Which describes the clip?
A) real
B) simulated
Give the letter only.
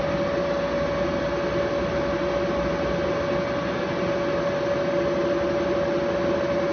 A